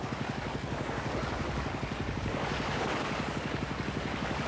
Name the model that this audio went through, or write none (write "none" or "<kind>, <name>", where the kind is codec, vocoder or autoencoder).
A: codec, DAC